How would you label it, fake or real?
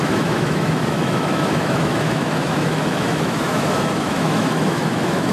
fake